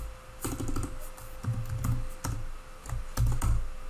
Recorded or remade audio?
recorded